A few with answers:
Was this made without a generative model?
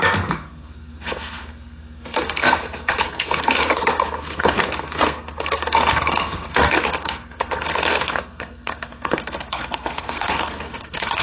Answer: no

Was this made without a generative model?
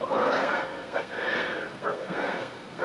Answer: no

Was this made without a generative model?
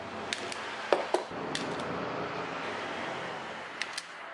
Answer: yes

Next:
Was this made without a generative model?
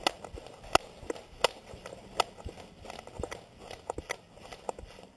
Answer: yes